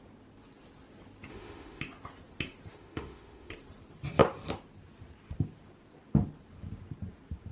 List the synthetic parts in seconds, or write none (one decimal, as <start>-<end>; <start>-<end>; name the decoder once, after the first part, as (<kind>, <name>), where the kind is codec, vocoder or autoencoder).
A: 1.3-1.8 (autoencoder, DAC-VAE); 2.7-3.5